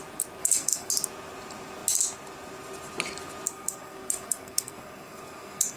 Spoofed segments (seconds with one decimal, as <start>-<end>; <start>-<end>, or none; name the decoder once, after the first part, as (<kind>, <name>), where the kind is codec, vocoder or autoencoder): 0.4-0.9 (codec, SNAC); 3.5-5.8